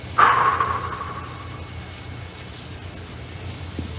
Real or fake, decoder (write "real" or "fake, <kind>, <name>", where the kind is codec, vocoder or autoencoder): real